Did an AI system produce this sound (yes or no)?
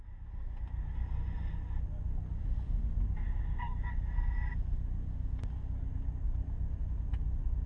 no